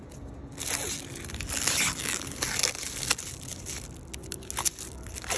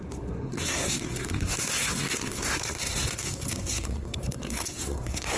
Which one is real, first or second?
first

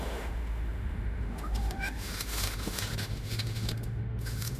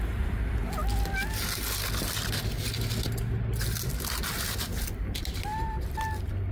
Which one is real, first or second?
second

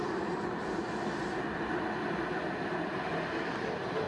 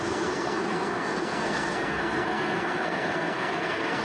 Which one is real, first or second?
first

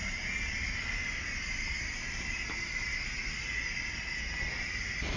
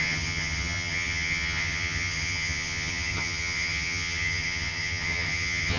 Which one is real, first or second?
first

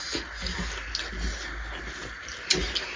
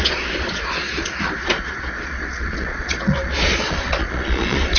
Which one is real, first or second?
first